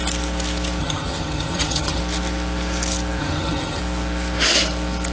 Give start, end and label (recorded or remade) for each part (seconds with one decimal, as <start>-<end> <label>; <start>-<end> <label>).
0.0-0.8 recorded; 0.8-2.0 remade; 2.0-3.2 recorded; 3.2-3.8 remade; 3.8-5.1 recorded